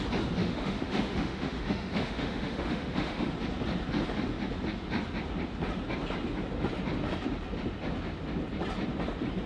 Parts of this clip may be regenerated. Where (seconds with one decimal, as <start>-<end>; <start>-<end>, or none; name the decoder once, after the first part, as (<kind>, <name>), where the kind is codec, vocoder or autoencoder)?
0.4-3.3 (autoencoder, DAC-VAE)